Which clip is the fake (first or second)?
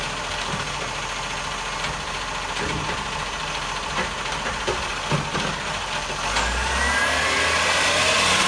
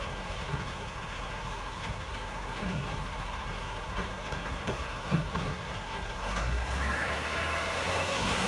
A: second